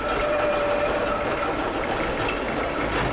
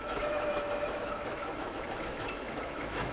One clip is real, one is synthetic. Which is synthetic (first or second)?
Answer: second